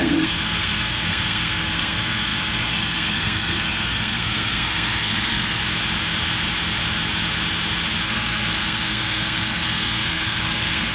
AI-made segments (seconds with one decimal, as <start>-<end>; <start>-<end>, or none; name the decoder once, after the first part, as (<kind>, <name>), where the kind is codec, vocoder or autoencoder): 0.0-5.6 (codec, SNAC); 8.0-10.9

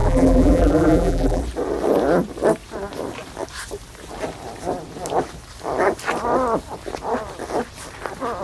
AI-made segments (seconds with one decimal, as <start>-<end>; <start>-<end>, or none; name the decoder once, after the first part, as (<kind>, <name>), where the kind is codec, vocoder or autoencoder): 0.0-1.4 (vocoder, BigVGAN v2)

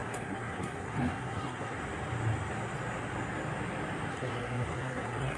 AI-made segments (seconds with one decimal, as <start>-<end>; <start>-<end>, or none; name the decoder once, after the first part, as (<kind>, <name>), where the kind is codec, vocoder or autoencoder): 0.0-1.8 (codec, SNAC); 4.1-5.4

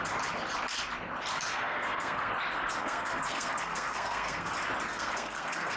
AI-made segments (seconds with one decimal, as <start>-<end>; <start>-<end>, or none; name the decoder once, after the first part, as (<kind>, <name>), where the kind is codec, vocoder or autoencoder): 1.5-2.3 (codec, SNAC); 2.8-4.5; 4.9-5.8